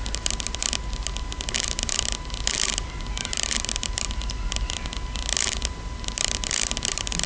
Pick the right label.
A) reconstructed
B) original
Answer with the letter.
B